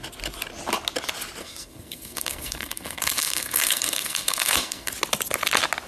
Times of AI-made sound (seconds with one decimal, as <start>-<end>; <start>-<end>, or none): 1.4-4.9